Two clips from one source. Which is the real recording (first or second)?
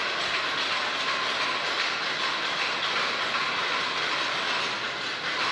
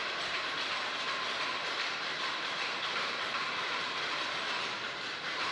first